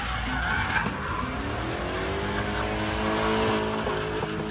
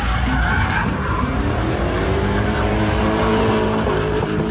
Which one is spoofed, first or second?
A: second